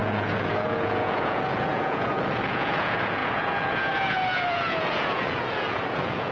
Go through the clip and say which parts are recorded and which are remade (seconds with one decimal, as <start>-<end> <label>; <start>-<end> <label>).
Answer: 0.0-6.3 remade